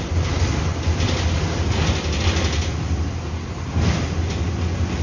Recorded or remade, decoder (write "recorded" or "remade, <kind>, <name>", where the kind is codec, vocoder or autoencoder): recorded